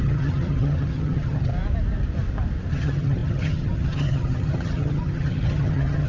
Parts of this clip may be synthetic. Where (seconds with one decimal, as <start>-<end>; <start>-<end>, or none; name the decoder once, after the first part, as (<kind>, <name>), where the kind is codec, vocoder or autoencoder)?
0.0-1.5 (vocoder, HiFi-GAN); 2.7-6.1